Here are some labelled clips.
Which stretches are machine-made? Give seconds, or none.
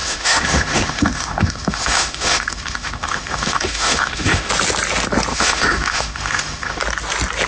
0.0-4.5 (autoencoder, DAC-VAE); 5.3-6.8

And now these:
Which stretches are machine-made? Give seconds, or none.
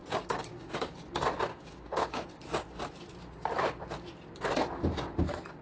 0.0-1.0 (codec, DAC); 1.5-2.3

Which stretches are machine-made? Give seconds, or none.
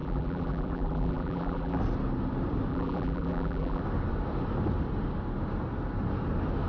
0.0-1.8 (vocoder, BigVGAN v2); 2.7-3.8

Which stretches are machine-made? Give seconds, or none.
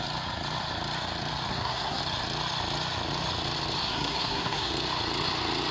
1.5-2.0 (codec, SNAC); 3.8-4.7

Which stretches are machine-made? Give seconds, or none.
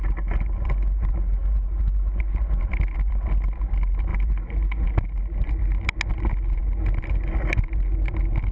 none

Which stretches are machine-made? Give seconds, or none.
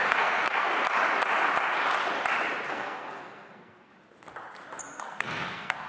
0.0-0.7 (codec, SNAC); 2.7-3.9; 5.0-5.9